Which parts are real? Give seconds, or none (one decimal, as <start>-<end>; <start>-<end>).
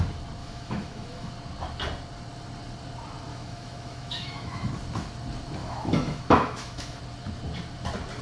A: 0.0-0.4; 1.3-3.3; 4.7-5.6; 7.0-8.2